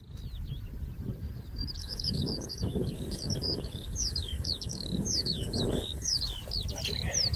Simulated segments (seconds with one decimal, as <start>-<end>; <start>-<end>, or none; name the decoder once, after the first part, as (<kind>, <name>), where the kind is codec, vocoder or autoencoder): 1.8-6.2 (codec, DAC)